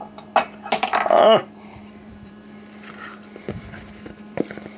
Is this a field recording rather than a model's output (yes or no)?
no